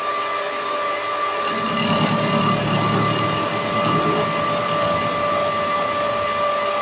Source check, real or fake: real